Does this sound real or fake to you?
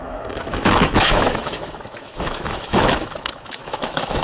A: fake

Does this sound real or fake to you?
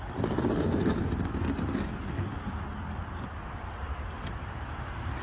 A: real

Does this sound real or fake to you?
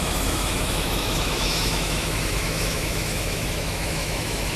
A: fake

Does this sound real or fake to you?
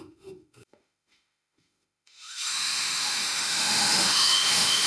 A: fake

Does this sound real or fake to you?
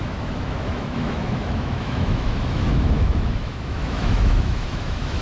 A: fake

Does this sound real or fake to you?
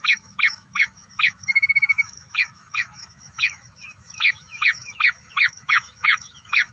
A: fake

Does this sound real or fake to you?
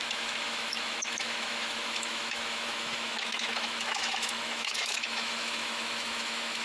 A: fake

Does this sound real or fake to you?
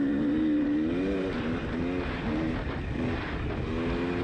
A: real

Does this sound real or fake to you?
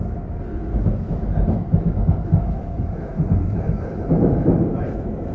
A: fake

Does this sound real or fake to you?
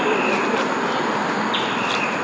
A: real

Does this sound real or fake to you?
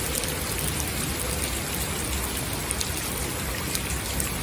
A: real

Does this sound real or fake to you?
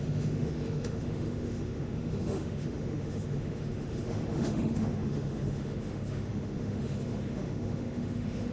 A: fake